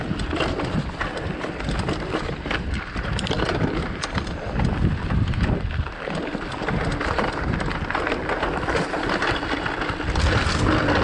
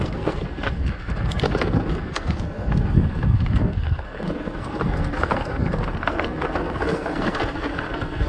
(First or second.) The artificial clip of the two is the second